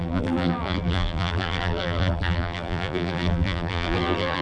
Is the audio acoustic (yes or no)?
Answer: no